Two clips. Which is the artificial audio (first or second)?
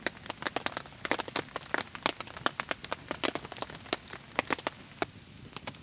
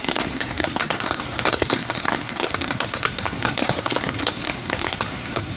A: second